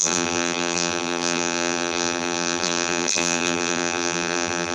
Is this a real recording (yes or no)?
no